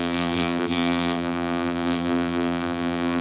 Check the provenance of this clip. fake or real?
fake